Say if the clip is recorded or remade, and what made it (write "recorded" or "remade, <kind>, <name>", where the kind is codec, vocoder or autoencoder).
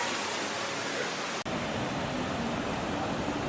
recorded